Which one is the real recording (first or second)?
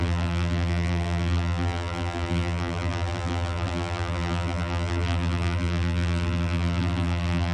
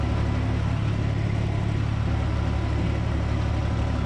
second